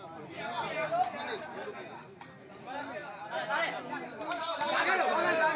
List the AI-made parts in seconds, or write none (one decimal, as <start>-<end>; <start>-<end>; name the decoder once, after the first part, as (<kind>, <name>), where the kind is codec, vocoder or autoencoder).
none